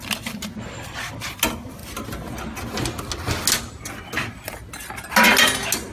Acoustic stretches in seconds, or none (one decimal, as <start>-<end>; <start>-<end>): 0.0-5.9